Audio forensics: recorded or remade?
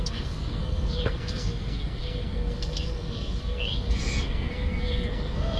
remade